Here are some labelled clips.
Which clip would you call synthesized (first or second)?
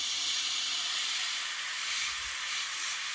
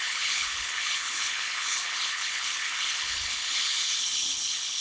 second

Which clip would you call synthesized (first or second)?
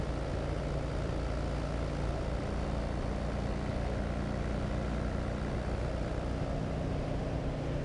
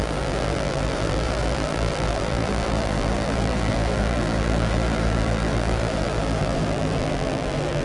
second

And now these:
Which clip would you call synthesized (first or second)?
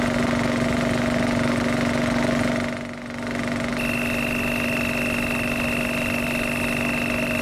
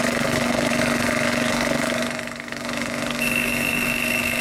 second